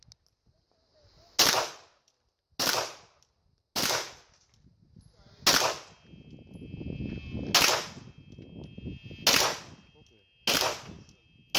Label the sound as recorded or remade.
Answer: recorded